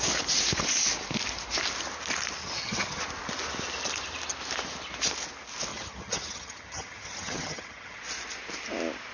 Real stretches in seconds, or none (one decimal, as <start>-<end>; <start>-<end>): 0.0-2.4; 3.0-5.7; 8.0-9.1